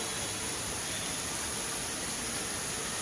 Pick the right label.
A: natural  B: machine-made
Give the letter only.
A